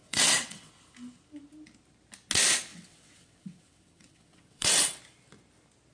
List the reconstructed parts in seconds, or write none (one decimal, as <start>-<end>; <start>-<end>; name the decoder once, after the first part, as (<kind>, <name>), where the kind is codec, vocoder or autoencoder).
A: 0.0-0.7 (vocoder, WaveNeXt); 2.7-5.0